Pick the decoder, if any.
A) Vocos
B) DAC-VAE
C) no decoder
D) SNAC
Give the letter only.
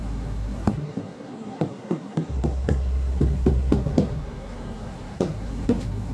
D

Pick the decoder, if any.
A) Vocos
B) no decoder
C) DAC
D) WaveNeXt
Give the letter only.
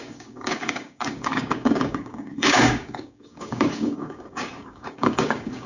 C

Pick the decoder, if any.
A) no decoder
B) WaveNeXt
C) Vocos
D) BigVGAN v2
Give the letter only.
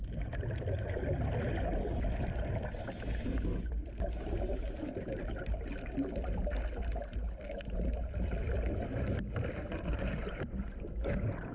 A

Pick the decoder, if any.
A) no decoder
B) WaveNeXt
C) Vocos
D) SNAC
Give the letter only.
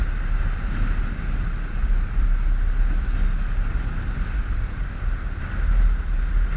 A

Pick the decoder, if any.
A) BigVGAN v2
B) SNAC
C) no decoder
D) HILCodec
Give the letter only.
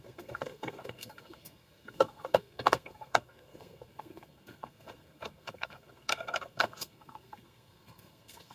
B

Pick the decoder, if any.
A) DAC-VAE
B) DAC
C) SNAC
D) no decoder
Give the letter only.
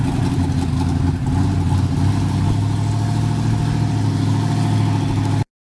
D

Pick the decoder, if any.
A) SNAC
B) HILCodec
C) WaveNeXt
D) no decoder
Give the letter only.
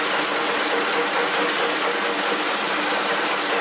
D